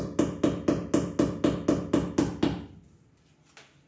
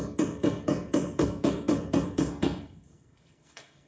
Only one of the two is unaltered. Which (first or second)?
first